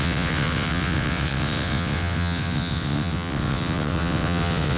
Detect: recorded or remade remade